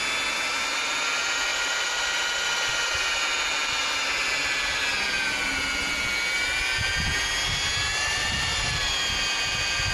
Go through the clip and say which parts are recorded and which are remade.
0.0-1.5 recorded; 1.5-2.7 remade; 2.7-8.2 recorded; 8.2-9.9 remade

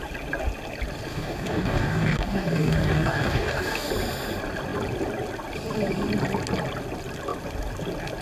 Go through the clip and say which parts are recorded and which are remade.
0.0-1.1 recorded; 1.1-3.9 remade; 3.9-8.2 recorded

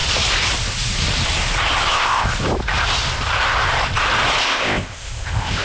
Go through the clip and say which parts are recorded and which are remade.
0.0-1.9 recorded; 1.9-2.3 remade; 2.3-4.4 recorded; 4.4-5.6 remade

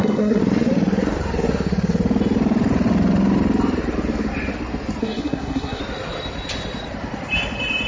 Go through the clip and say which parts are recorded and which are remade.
0.0-0.4 remade; 0.4-5.0 recorded; 5.0-5.8 remade; 5.8-7.9 recorded

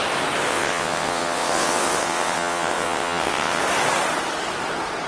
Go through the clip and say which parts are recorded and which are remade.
0.0-0.5 recorded; 0.5-3.6 remade; 3.6-5.1 recorded

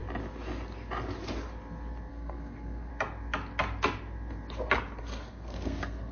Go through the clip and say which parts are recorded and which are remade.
0.0-2.1 recorded; 2.1-2.9 remade; 2.9-5.0 recorded; 5.0-6.1 remade

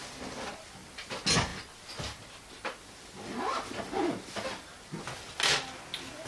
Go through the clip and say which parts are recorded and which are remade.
0.0-6.3 recorded